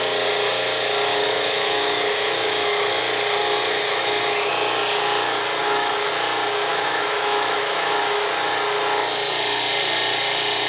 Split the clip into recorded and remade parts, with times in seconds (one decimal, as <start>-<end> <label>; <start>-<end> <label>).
0.0-1.1 recorded; 1.1-3.0 remade; 3.0-3.4 recorded; 3.4-4.5 remade; 4.5-5.6 recorded; 5.6-6.1 remade; 6.1-6.7 recorded; 6.7-8.5 remade; 8.5-10.7 recorded